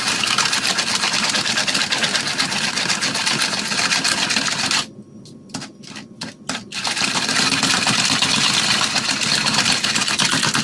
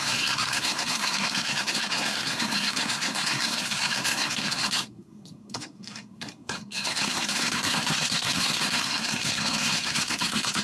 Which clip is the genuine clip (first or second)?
first